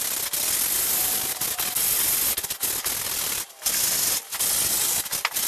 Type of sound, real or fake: real